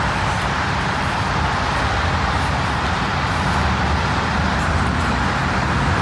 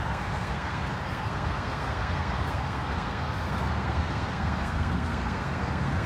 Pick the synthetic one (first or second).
second